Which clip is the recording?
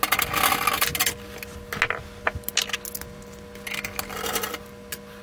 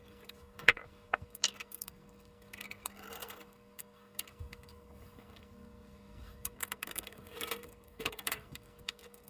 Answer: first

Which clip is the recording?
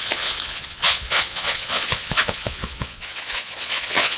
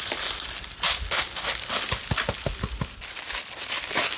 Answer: second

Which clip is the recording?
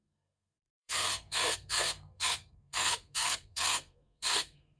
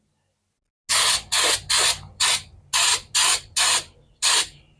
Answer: second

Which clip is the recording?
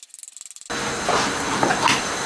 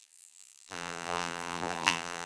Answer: first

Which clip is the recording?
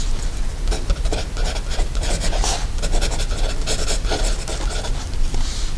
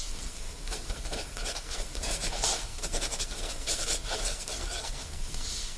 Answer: first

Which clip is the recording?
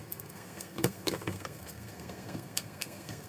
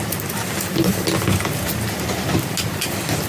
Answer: second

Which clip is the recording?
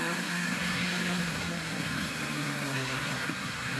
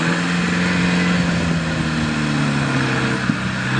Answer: second